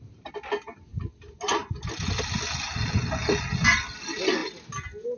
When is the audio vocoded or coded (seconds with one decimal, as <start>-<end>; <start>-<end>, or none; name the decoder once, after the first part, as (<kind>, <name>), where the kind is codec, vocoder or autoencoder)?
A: none